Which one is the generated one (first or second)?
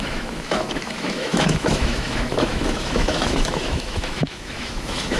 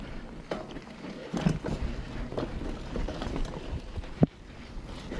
first